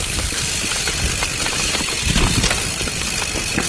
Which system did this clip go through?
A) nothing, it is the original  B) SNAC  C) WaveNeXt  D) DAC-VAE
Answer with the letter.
A